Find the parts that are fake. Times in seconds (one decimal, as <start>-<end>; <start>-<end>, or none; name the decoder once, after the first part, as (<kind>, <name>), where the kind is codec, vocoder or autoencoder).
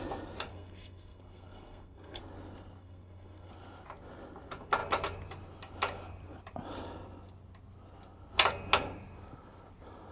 0.5-2.2 (codec, SNAC); 2.8-3.5